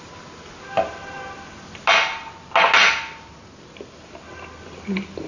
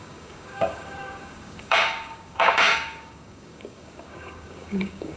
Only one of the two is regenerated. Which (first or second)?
second